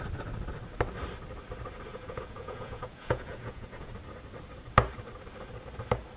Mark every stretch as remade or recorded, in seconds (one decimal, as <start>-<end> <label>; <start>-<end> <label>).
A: 0.0-1.9 recorded; 1.9-3.9 remade; 3.9-6.2 recorded